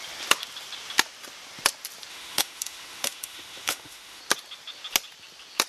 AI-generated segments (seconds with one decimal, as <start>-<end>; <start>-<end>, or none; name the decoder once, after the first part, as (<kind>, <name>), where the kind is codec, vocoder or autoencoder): 2.1-4.2 (autoencoder, DAC-VAE)